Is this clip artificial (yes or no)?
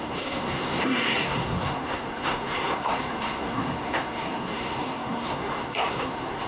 yes